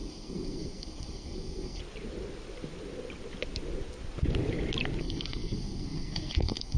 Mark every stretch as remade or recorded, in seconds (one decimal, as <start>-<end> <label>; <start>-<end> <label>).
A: 0.0-1.8 remade; 1.8-5.0 recorded; 5.0-6.8 remade